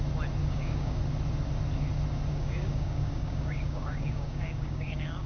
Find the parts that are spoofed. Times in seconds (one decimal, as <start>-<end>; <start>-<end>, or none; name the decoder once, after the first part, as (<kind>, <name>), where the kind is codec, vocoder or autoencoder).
0.4-1.0 (codec, DAC); 2.3-5.3